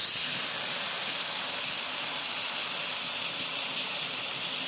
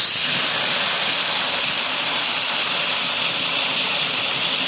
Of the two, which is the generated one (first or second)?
second